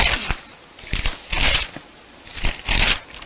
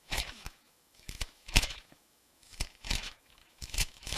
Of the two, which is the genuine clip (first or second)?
first